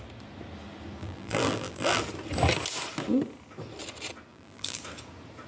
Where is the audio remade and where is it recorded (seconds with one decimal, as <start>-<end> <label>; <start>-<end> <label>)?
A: 0.0-1.0 recorded; 1.0-2.0 remade; 2.0-4.3 recorded; 4.3-4.8 remade; 4.8-5.5 recorded